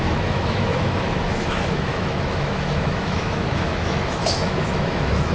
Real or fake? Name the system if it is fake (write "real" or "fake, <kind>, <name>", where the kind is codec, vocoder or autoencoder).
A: fake, autoencoder, DAC-VAE